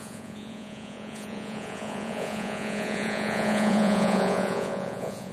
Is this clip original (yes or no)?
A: no